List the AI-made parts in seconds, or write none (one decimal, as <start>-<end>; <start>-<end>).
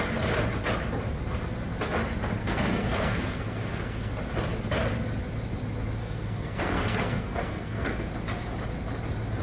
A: 2.4-4.1; 6.0-8.1